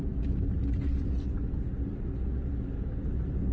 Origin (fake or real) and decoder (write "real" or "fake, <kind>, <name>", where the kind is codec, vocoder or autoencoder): real